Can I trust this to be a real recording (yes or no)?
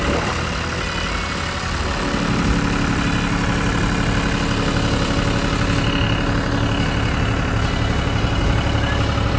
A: yes